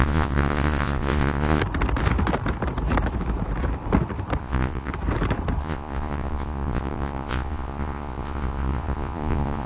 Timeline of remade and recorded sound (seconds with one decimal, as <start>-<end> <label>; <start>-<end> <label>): 0.0-1.6 remade; 1.6-4.4 recorded; 4.4-4.9 remade; 4.9-5.6 recorded; 5.6-9.7 remade